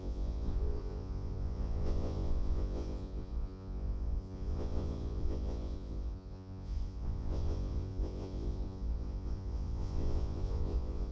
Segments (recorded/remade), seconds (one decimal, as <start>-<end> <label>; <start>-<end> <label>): 0.0-11.1 remade